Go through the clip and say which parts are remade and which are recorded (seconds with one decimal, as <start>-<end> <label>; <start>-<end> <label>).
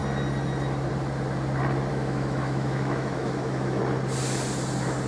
0.0-1.9 recorded; 1.9-3.8 remade; 3.8-5.1 recorded